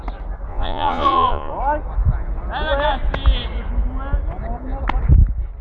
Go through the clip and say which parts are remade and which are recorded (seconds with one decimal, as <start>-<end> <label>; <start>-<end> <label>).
0.0-0.5 recorded; 0.5-1.5 remade; 1.5-5.6 recorded